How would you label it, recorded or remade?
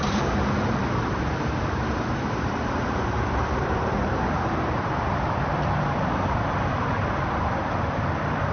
remade